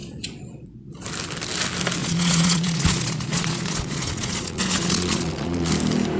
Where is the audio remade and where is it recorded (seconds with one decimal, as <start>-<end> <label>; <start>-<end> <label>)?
0.0-1.0 remade; 1.0-2.0 recorded; 2.0-5.7 remade; 5.7-6.2 recorded